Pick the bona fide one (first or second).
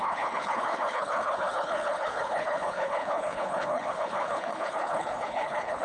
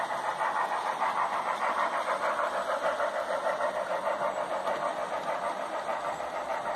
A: second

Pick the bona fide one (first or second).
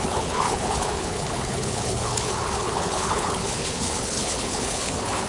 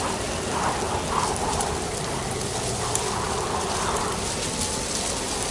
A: second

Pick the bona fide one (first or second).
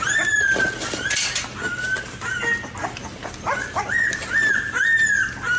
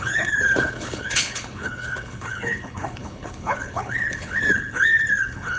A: first